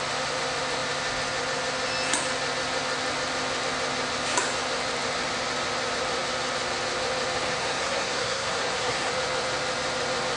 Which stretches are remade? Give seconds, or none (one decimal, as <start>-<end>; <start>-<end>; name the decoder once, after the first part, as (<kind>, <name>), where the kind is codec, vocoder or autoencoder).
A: 7.6-9.1 (codec, SNAC)